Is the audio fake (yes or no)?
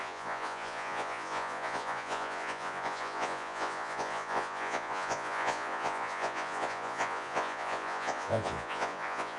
yes